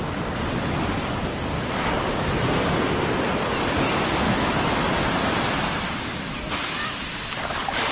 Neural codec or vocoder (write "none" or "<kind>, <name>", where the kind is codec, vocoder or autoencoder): none